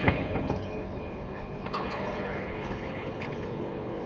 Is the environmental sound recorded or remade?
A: remade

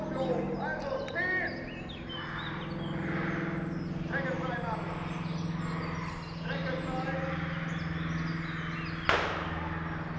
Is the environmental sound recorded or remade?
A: recorded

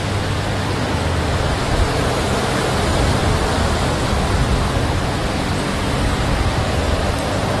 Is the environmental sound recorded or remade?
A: recorded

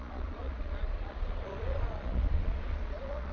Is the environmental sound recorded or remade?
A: remade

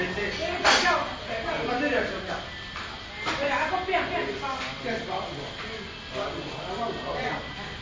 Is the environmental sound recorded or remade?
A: recorded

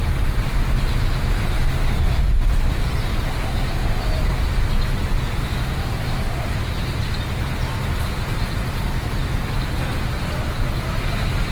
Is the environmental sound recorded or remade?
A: recorded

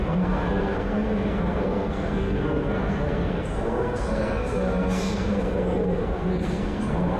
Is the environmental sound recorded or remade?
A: remade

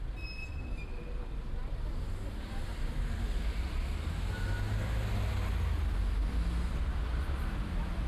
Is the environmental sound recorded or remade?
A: recorded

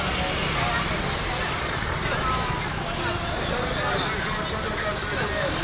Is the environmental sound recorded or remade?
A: recorded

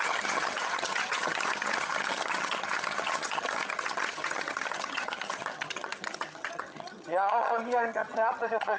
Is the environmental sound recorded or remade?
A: remade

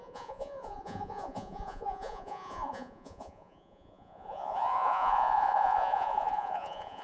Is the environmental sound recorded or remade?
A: remade